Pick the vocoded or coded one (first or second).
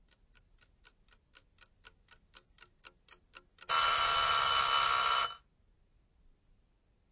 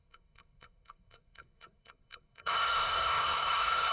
second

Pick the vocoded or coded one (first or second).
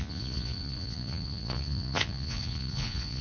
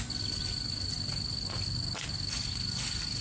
first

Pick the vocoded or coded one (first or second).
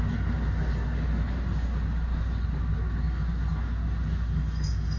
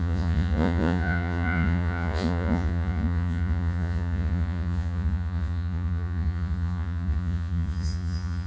second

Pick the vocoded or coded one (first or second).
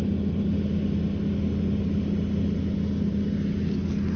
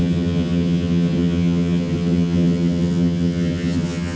second